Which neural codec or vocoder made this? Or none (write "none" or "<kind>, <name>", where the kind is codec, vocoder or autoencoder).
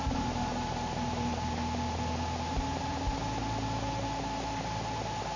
none